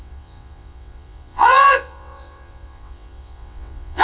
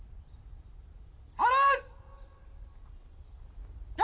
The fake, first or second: first